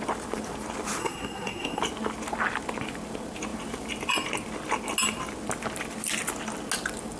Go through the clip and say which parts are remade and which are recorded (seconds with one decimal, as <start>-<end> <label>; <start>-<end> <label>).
0.0-1.0 recorded; 1.0-1.8 remade; 1.8-7.2 recorded